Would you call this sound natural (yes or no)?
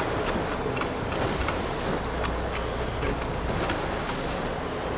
yes